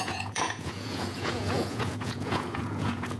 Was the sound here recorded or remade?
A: remade